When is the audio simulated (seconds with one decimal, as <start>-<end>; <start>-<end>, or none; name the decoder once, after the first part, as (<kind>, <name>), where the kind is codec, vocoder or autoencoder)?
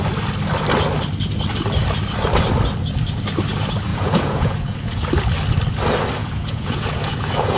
3.9-5.0 (vocoder, Vocos); 6.2-7.6